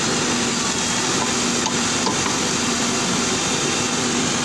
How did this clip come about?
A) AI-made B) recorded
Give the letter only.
B